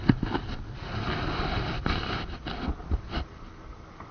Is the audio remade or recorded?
recorded